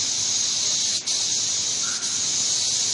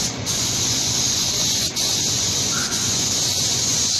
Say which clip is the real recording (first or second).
first